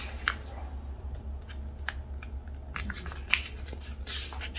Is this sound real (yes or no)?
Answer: yes